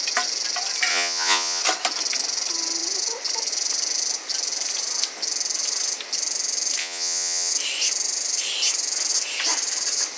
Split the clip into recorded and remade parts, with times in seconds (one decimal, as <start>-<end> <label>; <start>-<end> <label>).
0.0-0.9 recorded; 0.9-1.6 remade; 1.6-6.8 recorded; 6.8-7.5 remade; 7.5-10.2 recorded